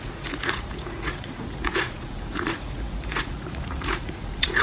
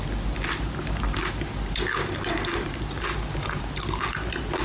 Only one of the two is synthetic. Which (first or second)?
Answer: first